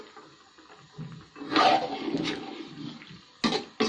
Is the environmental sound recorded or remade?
recorded